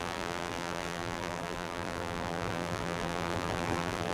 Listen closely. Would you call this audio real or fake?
fake